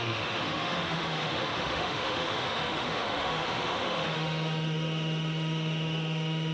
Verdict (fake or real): fake